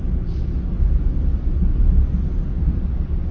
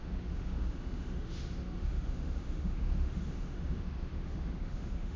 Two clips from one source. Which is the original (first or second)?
first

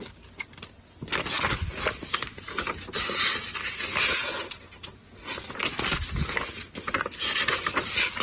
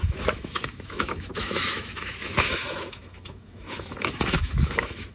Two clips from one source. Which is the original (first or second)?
first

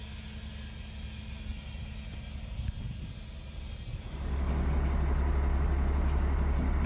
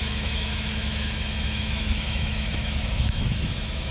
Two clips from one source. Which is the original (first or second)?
first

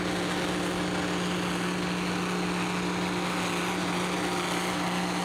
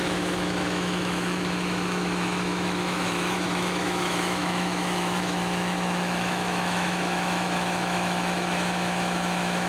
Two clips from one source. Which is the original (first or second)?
first